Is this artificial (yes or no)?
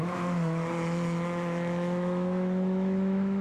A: yes